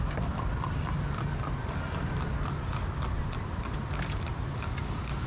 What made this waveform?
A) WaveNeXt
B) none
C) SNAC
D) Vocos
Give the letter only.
B